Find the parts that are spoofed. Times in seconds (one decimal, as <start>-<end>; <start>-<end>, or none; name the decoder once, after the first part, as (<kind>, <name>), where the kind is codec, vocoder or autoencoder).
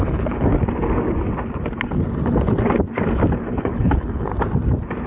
0.0-0.5 (codec, HILCodec); 3.6-4.3